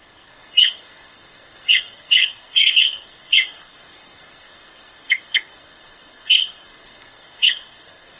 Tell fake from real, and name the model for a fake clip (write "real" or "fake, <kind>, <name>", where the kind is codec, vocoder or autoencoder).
fake, codec, SNAC